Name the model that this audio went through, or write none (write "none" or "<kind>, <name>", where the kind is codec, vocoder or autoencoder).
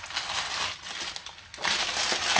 none